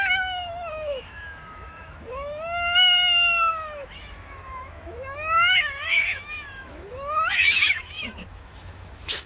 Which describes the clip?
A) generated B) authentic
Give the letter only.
A